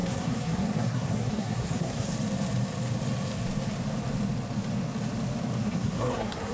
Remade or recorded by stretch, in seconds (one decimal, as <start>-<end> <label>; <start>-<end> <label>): 0.0-2.1 remade; 2.1-5.6 recorded; 5.6-6.5 remade